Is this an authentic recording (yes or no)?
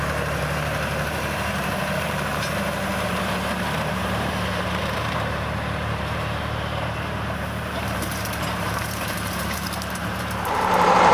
no